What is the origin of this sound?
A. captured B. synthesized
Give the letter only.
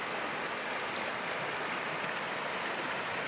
A